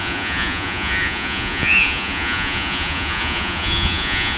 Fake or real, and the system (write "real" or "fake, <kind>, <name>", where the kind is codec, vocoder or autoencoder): fake, vocoder, Vocos